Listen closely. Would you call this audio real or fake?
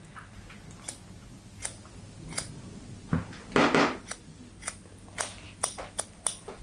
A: real